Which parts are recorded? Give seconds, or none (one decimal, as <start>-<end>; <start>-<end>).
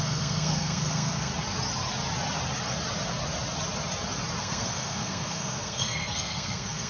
1.3-4.4